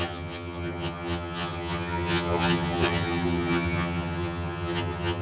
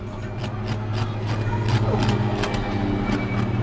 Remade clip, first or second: first